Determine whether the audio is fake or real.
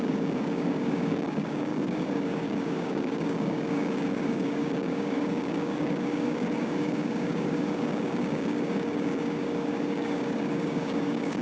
fake